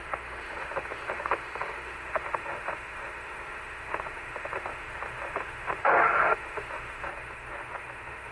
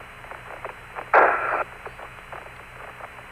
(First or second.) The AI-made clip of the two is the first